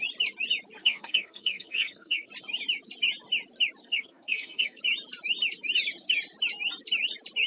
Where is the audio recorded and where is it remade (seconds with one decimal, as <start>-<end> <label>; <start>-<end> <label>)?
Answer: 0.0-0.8 recorded; 0.8-2.3 remade; 2.3-3.8 recorded; 3.8-4.8 remade; 4.8-7.5 recorded